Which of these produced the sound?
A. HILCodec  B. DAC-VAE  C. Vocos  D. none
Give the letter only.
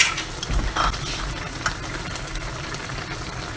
D